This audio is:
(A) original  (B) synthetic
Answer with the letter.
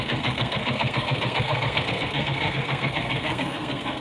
B